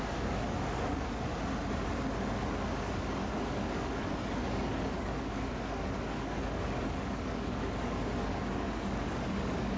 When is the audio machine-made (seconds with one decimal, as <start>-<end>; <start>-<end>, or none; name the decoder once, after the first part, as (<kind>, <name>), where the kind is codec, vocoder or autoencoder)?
0.0-1.3 (codec, DAC); 2.7-9.8